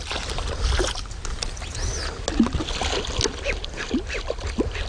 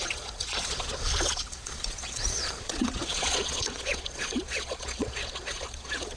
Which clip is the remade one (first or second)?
second